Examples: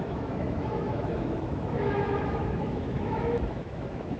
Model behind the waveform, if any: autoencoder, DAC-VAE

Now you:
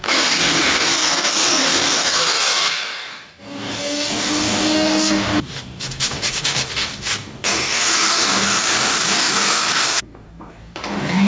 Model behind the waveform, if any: codec, DAC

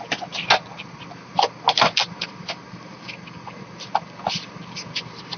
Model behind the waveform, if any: none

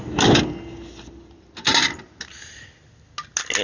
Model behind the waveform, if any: none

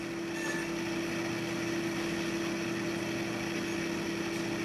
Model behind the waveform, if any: none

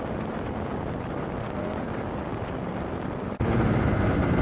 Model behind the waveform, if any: none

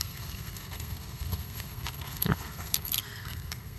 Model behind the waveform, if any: codec, SNAC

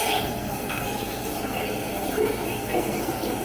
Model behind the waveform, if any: codec, SNAC